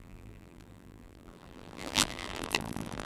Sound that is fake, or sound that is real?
fake